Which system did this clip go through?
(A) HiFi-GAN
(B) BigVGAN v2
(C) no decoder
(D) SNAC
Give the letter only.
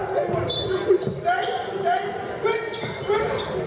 C